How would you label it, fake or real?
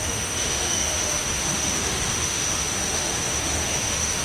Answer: fake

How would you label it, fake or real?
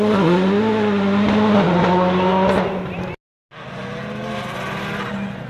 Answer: real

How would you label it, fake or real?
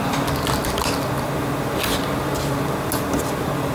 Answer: real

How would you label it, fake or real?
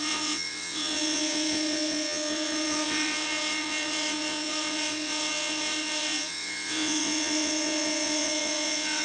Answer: fake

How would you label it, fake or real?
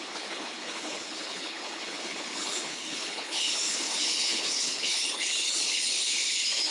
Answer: fake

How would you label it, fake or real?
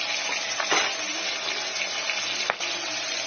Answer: real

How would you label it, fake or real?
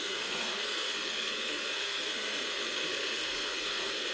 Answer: fake